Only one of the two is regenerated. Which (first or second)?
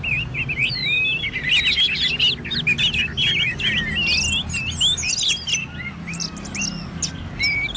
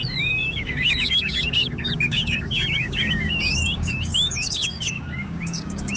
second